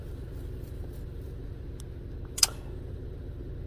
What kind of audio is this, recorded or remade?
recorded